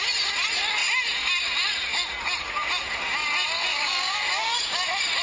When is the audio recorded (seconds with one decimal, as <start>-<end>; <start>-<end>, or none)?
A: 0.0-3.7; 4.3-5.2